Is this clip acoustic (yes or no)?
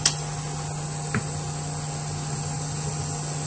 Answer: yes